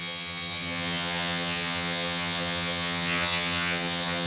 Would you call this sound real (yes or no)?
no